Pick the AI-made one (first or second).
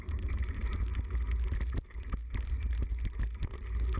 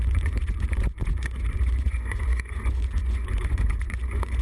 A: second